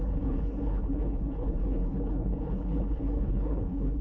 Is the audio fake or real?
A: fake